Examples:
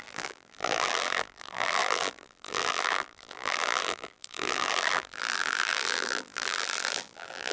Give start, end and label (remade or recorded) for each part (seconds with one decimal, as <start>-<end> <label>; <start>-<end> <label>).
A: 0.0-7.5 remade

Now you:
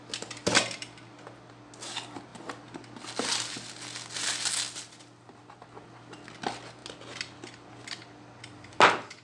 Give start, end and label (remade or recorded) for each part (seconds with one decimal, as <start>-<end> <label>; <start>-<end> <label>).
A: 0.0-9.2 recorded

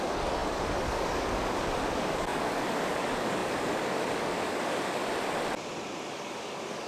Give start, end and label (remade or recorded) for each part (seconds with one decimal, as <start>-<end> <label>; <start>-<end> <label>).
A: 0.0-5.0 remade; 5.0-6.1 recorded; 6.1-6.9 remade

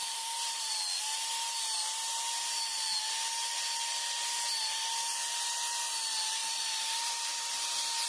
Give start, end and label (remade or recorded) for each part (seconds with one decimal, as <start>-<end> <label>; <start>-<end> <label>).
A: 0.0-0.7 remade; 0.7-6.4 recorded; 6.4-8.1 remade